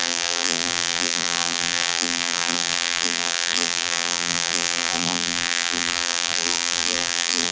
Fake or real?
fake